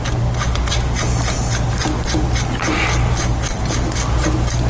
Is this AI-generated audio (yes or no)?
no